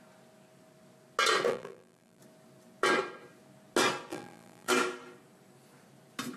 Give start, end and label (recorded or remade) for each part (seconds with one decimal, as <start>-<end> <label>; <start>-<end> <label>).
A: 0.0-1.5 recorded; 1.5-2.2 remade; 2.2-4.1 recorded; 4.1-4.7 remade; 4.7-6.4 recorded